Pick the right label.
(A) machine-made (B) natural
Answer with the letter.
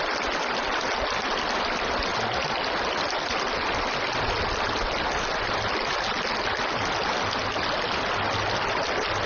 B